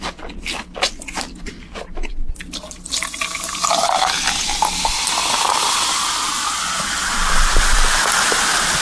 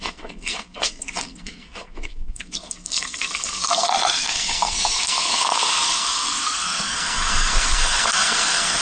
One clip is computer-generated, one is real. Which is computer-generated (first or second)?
second